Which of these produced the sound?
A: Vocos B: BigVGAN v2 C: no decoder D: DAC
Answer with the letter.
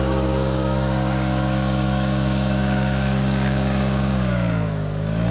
D